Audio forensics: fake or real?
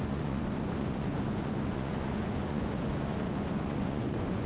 fake